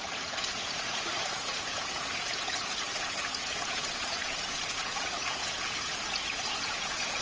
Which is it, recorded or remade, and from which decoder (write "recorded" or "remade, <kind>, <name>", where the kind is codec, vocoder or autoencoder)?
remade, vocoder, Vocos